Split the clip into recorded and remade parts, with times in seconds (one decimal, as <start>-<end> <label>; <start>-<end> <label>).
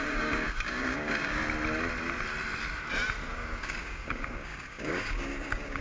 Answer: 0.0-1.4 remade; 1.4-3.3 recorded; 3.3-5.8 remade